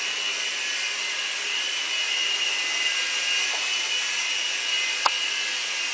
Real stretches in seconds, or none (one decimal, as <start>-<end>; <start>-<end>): 0.0-5.9